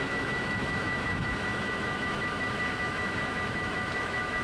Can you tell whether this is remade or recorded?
remade